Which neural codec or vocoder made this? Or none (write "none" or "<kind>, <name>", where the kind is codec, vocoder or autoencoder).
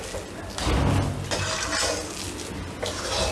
none